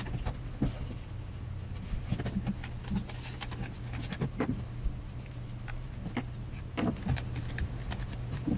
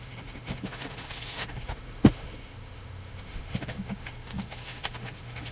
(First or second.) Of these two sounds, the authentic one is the first